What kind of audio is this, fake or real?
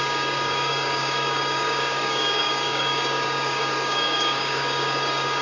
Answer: fake